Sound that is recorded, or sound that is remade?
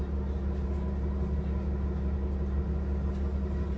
recorded